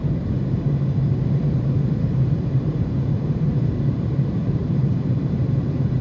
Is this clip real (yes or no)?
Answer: no